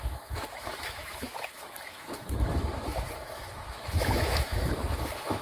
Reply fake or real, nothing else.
fake